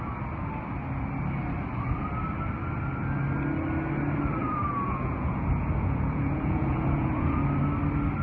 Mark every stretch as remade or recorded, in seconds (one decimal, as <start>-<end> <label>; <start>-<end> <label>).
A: 0.0-4.4 recorded; 4.4-7.4 remade; 7.4-8.2 recorded